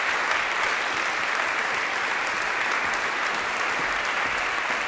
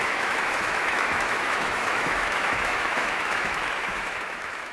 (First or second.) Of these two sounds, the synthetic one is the second